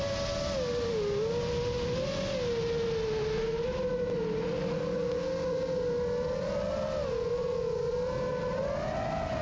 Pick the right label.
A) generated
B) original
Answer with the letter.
B